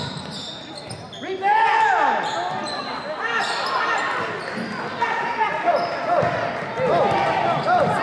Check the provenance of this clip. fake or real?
real